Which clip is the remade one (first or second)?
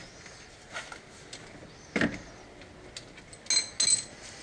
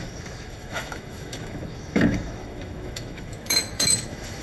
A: second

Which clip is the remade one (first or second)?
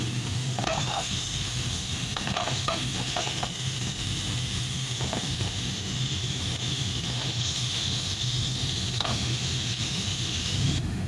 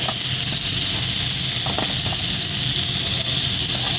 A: first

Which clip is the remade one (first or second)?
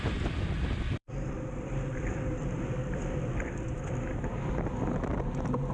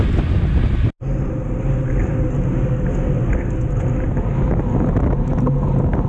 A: first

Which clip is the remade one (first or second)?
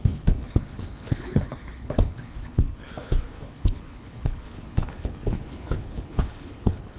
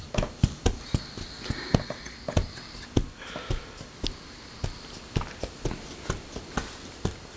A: first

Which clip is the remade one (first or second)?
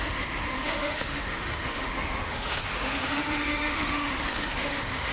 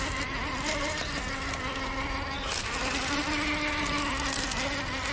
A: first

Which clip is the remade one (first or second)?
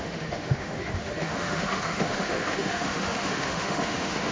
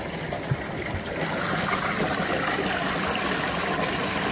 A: first